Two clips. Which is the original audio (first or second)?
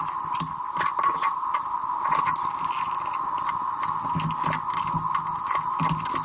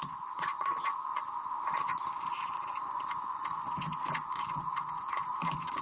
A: first